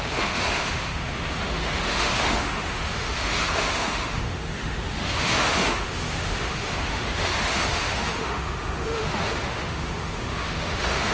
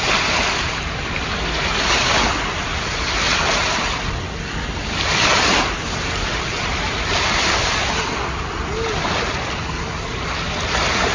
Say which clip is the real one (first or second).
second